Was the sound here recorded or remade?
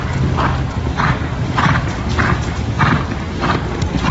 recorded